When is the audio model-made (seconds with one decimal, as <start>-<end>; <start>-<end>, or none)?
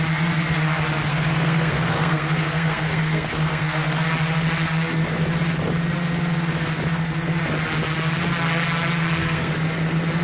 1.1-4.0; 9.0-9.5